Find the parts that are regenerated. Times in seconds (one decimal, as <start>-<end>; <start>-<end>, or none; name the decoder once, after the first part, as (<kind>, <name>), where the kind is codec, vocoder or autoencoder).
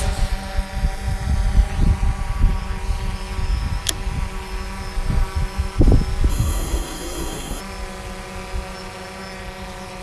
6.3-7.6 (codec, SNAC)